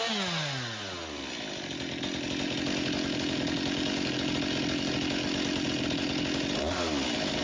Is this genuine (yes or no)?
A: yes